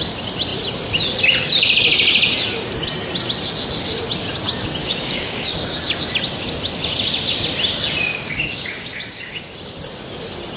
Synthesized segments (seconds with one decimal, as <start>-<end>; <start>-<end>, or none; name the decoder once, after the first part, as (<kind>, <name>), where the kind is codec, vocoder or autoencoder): 4.8-5.8 (codec, DAC); 8.1-9.5